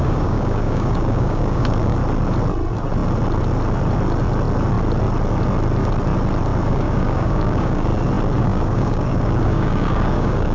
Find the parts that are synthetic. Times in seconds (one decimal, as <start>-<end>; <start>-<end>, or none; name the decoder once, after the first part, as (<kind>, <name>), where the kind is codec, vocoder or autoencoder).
0.0-2.0 (codec, DAC); 6.7-7.9; 8.4-10.5